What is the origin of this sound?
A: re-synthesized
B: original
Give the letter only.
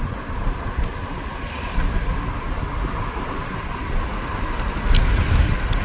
B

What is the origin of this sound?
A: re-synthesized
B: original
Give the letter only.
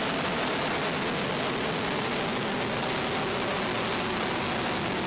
B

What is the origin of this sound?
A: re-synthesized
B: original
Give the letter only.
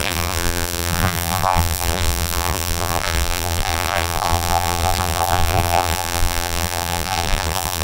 A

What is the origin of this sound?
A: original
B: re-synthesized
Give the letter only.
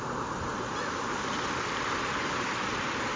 A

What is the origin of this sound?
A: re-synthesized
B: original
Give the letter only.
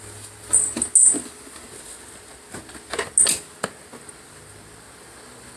B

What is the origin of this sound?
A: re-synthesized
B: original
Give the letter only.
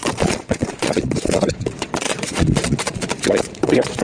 A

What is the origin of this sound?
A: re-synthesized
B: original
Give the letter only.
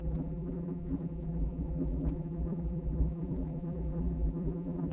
A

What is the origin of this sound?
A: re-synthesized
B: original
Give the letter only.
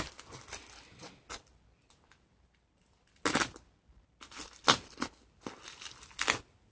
B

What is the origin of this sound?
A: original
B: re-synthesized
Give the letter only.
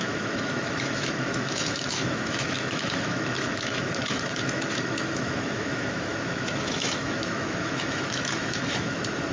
B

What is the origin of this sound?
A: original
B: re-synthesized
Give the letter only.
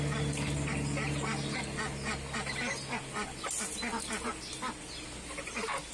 A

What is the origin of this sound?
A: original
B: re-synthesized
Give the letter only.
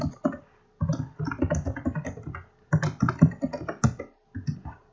A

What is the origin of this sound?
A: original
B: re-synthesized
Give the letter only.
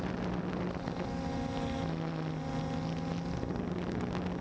A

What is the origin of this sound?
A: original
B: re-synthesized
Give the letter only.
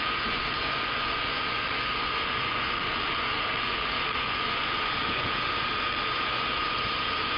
B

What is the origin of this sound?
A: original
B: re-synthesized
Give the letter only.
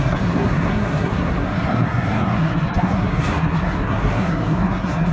B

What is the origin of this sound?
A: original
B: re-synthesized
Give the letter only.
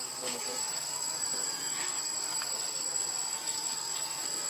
B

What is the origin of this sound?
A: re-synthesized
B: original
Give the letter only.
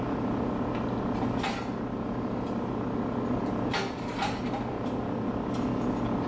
B